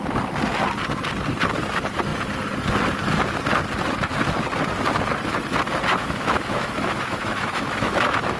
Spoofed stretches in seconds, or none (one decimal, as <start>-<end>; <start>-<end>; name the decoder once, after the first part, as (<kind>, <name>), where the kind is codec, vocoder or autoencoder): 5.9-8.4 (autoencoder, DAC-VAE)